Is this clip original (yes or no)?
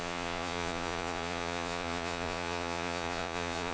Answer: no